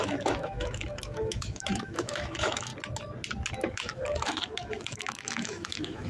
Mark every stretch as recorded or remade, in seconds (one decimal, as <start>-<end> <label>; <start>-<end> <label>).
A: 0.0-2.7 remade; 2.7-3.5 recorded; 3.5-6.1 remade